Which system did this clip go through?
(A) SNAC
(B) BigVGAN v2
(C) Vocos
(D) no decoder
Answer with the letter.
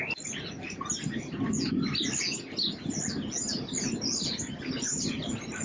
D